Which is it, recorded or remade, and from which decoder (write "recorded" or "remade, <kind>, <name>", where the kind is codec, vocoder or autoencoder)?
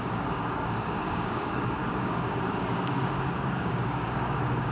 remade, codec, DAC